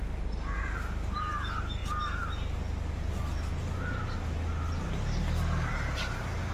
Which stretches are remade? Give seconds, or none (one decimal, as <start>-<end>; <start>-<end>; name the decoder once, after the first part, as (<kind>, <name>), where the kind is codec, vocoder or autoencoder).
none